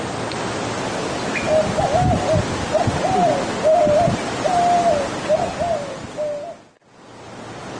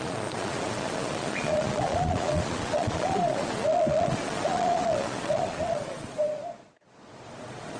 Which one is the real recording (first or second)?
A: first